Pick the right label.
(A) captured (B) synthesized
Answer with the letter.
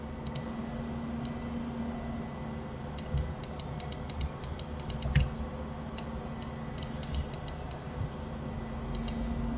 A